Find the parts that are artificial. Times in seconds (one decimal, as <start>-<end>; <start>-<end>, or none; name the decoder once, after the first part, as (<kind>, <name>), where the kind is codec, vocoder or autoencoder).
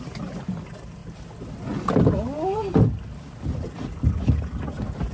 none